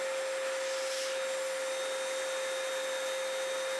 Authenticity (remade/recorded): recorded